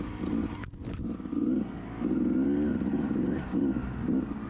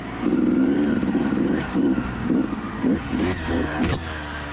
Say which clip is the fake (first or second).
second